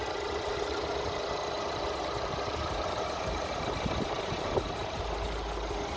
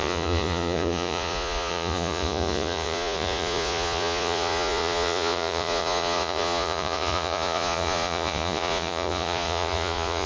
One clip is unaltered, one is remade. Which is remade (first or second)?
second